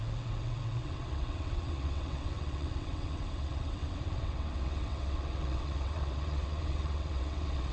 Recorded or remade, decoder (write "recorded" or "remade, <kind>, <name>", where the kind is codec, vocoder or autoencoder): remade, vocoder, WaveNeXt